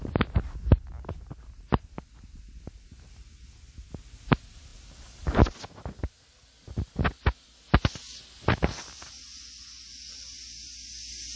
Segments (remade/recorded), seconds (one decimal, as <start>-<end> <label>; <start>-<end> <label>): 0.0-11.4 recorded